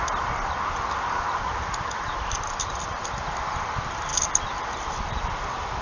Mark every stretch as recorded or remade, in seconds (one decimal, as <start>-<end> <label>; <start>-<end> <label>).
0.0-5.8 recorded